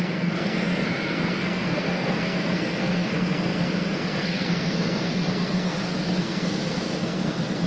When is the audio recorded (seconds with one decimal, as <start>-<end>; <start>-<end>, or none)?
none